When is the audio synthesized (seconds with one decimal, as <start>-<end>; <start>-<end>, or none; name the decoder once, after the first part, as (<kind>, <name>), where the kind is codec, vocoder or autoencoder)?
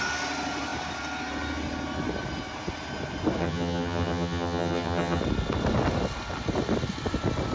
3.4-5.2 (vocoder, HiFi-GAN)